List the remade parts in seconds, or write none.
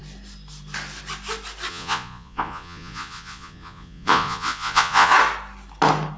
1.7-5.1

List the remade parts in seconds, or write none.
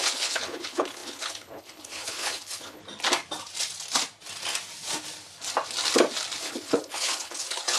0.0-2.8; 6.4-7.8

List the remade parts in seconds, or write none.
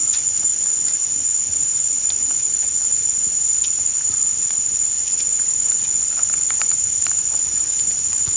0.0-8.4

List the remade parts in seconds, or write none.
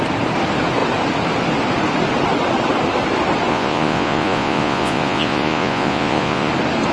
3.5-6.5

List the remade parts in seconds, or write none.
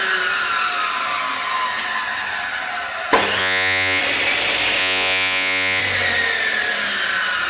3.4-4.0; 4.8-5.8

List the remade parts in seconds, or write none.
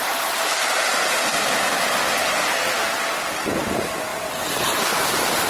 none